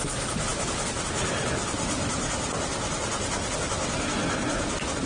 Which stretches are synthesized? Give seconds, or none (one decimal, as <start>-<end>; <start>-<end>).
none